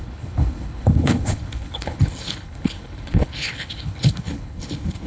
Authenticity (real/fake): fake